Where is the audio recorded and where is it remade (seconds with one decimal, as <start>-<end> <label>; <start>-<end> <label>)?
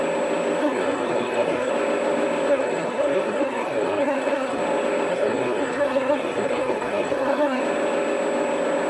0.0-0.6 recorded; 0.6-1.7 remade; 1.7-2.5 recorded; 2.5-4.6 remade; 4.6-5.1 recorded; 5.1-7.6 remade; 7.6-8.9 recorded